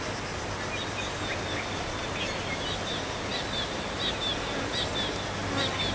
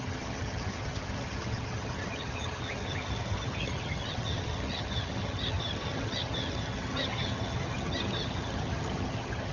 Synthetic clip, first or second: second